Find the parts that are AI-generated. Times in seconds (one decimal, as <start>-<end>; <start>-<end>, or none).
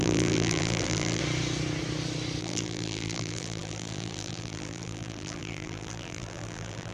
0.0-1.2; 2.4-6.9